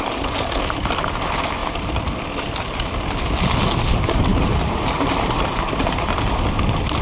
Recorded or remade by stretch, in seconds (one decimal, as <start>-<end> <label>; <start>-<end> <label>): 0.0-4.3 recorded; 4.3-6.1 remade; 6.1-7.0 recorded